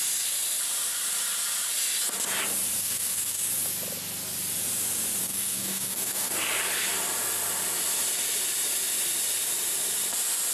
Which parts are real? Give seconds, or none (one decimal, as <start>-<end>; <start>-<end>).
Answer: 0.0-2.8; 3.5-5.2; 6.3-10.5